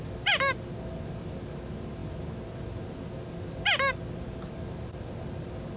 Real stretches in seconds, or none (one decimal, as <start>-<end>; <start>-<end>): 0.0-5.8